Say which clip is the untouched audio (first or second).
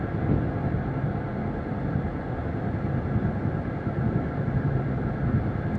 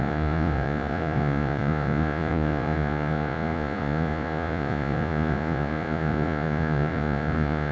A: first